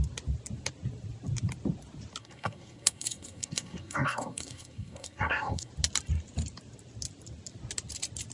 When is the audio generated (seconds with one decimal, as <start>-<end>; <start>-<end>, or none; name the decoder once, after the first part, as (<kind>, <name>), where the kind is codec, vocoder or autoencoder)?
2.2-5.7 (codec, SNAC)